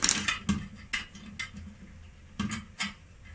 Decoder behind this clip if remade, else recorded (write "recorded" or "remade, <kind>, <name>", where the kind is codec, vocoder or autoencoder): recorded